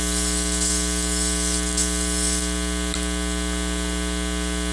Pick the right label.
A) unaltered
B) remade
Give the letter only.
A